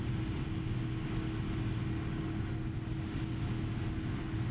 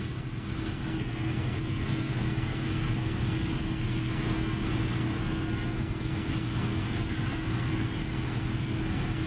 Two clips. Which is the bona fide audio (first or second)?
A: first